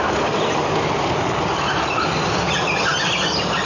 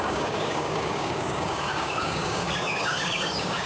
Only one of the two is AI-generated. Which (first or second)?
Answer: second